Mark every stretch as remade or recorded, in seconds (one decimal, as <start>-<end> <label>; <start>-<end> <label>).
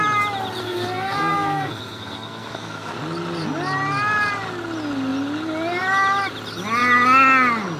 0.0-0.6 recorded; 0.6-2.9 remade; 2.9-7.8 recorded